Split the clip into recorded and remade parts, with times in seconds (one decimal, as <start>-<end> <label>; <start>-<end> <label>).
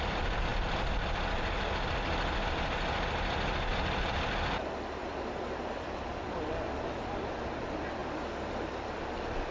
0.0-8.0 remade; 8.0-8.5 recorded; 8.5-9.5 remade